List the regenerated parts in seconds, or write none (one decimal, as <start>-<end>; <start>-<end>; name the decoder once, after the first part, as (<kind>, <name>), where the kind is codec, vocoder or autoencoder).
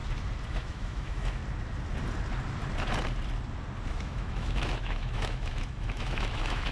0.5-1.4 (autoencoder, DAC-VAE); 3.9-6.7